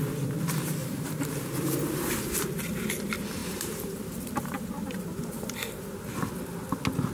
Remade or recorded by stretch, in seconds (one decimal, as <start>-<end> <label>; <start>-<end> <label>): 0.0-0.8 recorded; 0.8-2.3 remade; 2.3-3.4 recorded; 3.4-6.3 remade; 6.3-7.1 recorded